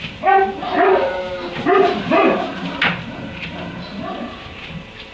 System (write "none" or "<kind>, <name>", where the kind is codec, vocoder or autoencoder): none